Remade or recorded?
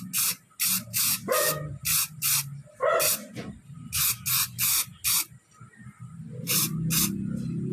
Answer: recorded